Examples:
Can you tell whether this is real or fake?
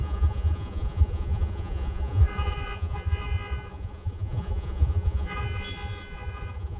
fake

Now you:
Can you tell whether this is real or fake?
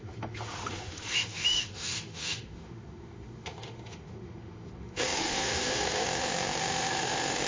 fake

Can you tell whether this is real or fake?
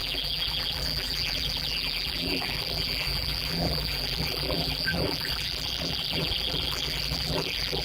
fake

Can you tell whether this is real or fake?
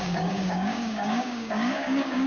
fake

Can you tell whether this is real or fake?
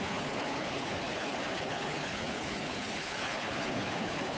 fake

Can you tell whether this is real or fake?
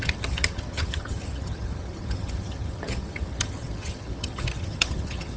fake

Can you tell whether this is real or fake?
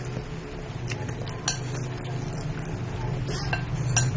real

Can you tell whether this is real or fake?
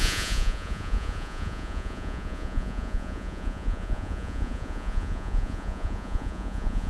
fake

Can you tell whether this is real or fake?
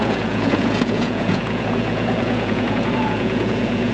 fake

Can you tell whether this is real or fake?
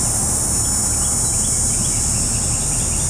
real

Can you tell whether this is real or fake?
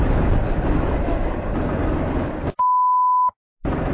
real